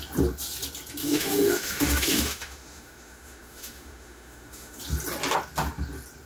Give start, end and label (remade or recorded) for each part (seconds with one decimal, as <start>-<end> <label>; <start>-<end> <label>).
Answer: 0.0-1.0 recorded; 1.0-4.8 remade; 4.8-6.3 recorded